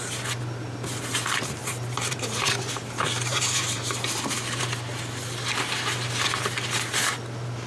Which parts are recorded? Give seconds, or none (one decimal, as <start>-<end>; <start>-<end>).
0.0-1.6; 4.6-7.7